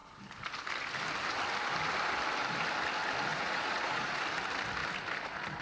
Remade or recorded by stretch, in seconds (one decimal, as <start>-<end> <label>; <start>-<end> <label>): 0.0-3.3 recorded; 3.3-4.2 remade; 4.2-5.6 recorded